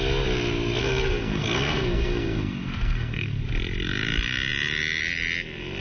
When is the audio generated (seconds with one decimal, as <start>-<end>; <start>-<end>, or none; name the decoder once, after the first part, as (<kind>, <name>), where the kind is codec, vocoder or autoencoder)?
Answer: 0.8-3.4 (codec, SNAC)